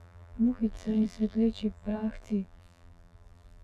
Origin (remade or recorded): remade